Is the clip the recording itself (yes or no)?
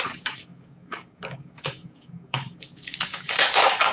no